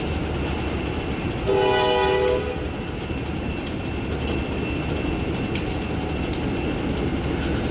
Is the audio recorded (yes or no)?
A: yes